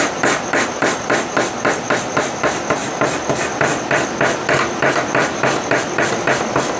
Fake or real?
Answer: fake